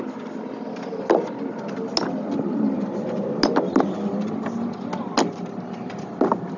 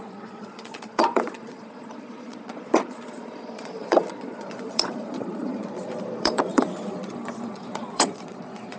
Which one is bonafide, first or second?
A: first